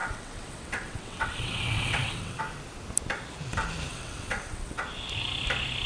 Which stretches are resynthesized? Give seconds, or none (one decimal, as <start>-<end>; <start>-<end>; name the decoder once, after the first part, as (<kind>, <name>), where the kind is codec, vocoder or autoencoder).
0.0-2.4 (vocoder, WaveNeXt); 3.9-4.8